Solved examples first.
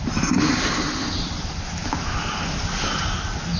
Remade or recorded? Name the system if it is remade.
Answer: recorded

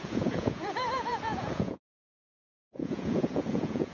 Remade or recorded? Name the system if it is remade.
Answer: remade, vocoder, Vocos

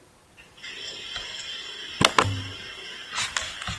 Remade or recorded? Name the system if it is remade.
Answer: recorded